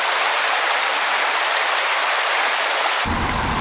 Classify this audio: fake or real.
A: real